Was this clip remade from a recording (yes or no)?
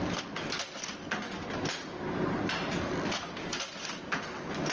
no